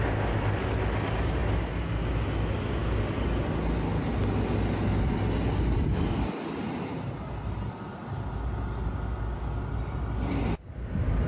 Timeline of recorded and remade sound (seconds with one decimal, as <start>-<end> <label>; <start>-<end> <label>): 0.0-11.3 recorded